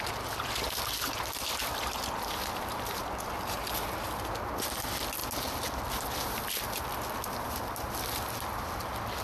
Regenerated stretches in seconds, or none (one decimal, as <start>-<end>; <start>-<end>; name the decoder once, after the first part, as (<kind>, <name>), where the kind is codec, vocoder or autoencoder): none